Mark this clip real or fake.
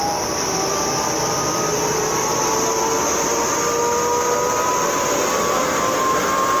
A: fake